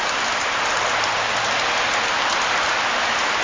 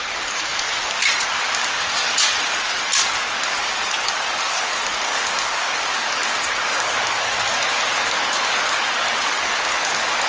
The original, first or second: first